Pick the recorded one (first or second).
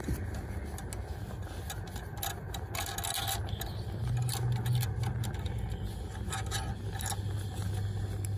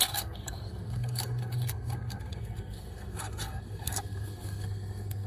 first